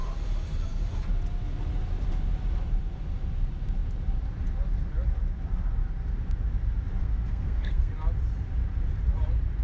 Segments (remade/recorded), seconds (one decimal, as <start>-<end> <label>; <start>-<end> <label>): 0.0-7.0 recorded; 7.0-7.9 remade; 7.9-9.6 recorded